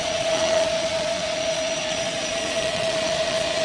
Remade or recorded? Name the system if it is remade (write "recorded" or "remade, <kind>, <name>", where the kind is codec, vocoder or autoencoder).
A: remade, vocoder, Vocos